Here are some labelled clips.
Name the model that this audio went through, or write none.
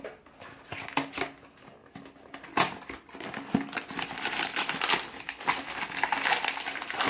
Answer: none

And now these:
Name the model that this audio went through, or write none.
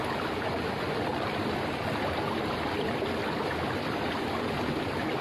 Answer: none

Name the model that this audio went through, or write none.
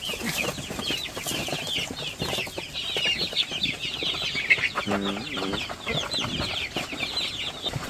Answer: none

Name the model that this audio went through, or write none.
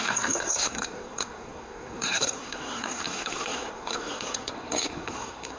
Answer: codec, SNAC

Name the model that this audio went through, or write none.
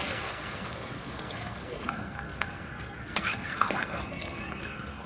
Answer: codec, SNAC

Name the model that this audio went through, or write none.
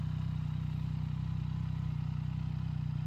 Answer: none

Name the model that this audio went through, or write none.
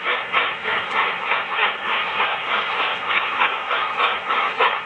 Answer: codec, SNAC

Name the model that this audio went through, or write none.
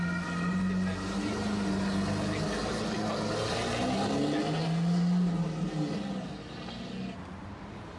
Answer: none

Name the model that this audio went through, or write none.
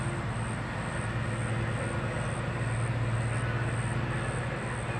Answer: none